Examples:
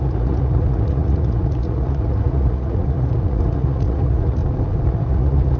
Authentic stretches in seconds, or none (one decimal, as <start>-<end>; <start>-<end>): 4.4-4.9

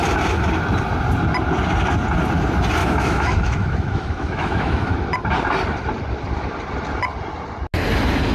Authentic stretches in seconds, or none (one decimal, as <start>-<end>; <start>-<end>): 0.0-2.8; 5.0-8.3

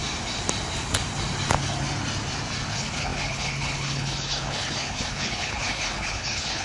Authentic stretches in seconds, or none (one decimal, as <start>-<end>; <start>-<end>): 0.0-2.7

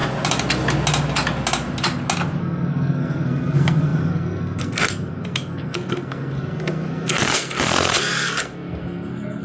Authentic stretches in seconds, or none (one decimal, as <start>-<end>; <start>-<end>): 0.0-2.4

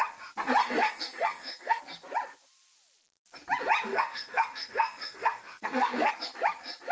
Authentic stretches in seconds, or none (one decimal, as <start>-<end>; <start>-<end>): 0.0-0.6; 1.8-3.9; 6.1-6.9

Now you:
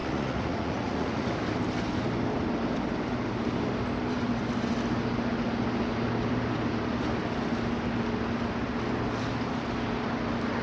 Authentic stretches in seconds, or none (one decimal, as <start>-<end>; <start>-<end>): 1.3-10.6

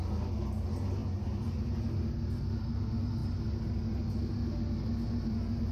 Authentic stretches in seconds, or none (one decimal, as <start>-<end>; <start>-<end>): 0.0-5.7